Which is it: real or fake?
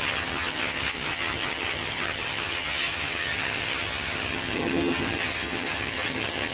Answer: fake